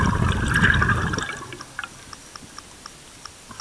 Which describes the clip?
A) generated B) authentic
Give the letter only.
B